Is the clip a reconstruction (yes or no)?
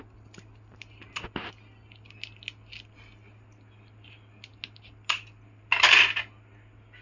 no